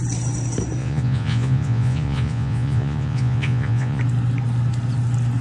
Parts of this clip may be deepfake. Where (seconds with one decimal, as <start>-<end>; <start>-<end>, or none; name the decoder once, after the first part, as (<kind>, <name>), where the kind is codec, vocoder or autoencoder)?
0.8-4.0 (vocoder, Vocos)